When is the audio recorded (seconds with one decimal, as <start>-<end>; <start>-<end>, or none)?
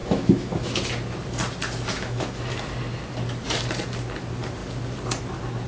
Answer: 0.8-1.9; 2.5-5.7